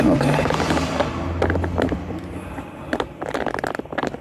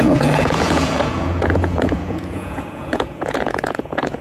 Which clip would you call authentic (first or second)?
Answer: first